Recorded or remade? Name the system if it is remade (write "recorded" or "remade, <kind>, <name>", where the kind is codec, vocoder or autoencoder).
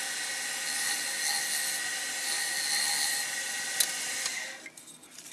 recorded